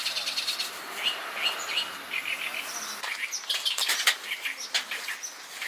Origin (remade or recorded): recorded